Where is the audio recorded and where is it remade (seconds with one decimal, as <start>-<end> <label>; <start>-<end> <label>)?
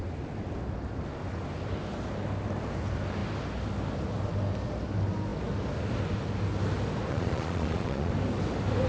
0.0-7.1 recorded; 7.1-8.1 remade; 8.1-8.9 recorded